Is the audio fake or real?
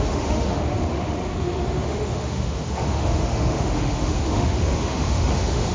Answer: fake